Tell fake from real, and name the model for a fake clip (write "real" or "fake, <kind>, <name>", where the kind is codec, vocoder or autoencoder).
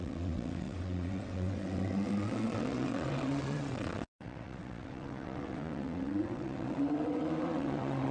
fake, vocoder, WaveNeXt